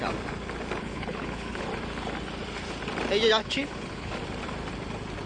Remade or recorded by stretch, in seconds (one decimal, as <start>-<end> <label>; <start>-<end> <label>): 0.0-0.8 recorded; 0.8-1.7 remade; 1.7-3.4 recorded; 3.4-4.1 remade; 4.1-5.3 recorded

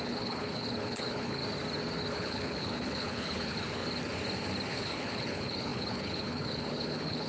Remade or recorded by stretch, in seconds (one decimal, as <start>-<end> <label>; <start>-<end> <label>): 0.0-1.4 remade; 1.4-2.1 recorded; 2.1-3.8 remade; 3.8-4.7 recorded; 4.7-7.3 remade

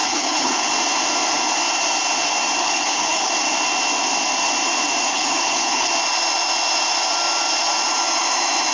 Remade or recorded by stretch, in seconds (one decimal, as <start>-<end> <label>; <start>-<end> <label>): 0.0-0.7 remade; 0.7-2.6 recorded; 2.6-3.3 remade; 3.3-5.1 recorded; 5.1-5.9 remade; 5.9-8.7 recorded

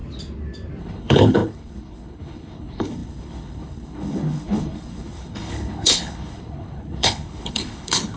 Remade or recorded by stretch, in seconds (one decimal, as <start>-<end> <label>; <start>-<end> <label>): 0.0-0.8 recorded; 0.8-8.2 remade

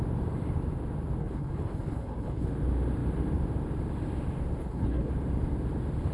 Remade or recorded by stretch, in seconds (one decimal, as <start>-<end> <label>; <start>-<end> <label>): 0.0-1.2 recorded; 1.2-2.5 remade; 2.5-4.6 recorded; 4.6-5.1 remade; 5.1-6.1 recorded

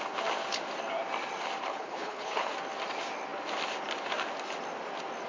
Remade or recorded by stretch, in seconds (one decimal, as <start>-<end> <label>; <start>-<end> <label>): 0.0-1.7 recorded; 1.7-2.5 remade; 2.5-5.3 recorded

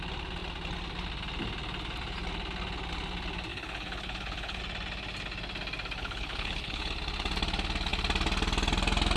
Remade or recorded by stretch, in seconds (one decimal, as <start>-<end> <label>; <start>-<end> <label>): 0.0-3.5 recorded; 3.5-4.6 remade; 4.6-6.0 recorded; 6.0-6.9 remade; 6.9-9.2 recorded

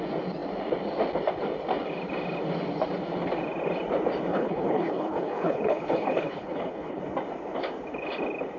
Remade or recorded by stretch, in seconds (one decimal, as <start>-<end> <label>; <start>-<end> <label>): 0.0-4.3 recorded; 4.3-7.0 remade; 7.0-8.6 recorded